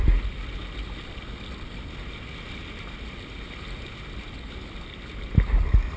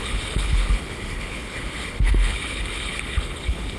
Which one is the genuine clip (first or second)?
first